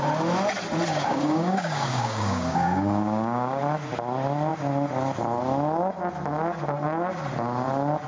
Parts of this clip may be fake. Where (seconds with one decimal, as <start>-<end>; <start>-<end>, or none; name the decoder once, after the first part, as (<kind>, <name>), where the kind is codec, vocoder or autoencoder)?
0.9-3.6 (codec, DAC)